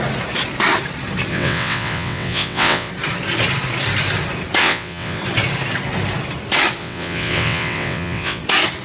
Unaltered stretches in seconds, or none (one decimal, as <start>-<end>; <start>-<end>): 0.0-1.3; 2.9-4.6; 5.2-6.8; 8.4-8.8